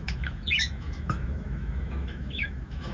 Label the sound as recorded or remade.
remade